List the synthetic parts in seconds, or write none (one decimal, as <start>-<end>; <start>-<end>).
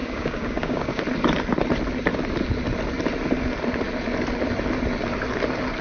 0.0-1.0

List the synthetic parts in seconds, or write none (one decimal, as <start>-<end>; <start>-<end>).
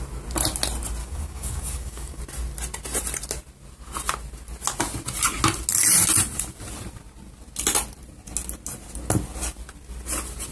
1.0-2.2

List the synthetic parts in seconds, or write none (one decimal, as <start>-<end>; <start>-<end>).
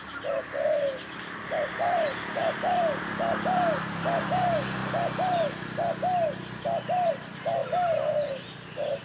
none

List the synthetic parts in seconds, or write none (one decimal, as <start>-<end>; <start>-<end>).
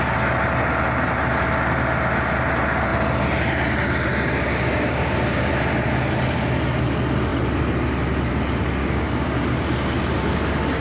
4.1-5.5; 8.8-9.4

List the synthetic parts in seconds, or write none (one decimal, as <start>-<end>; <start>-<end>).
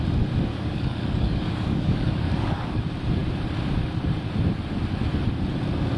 0.5-2.8